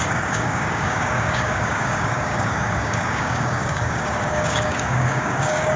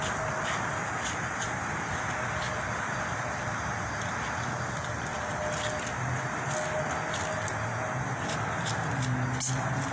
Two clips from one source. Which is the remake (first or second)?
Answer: first